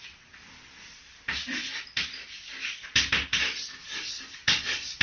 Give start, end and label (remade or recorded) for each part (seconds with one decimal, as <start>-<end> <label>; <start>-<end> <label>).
0.0-2.2 recorded; 2.2-3.0 remade; 3.0-3.8 recorded; 3.8-5.0 remade